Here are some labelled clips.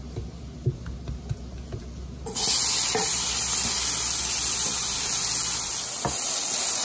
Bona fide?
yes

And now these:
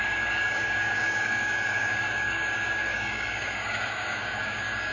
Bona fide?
no